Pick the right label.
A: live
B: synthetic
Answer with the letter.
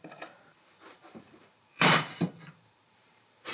B